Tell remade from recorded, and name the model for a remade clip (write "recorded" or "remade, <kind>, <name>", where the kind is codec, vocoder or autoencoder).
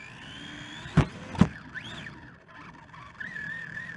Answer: recorded